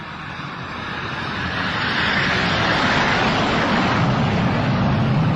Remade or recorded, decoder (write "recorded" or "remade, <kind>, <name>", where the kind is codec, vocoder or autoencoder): recorded